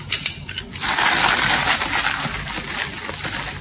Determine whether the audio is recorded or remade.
recorded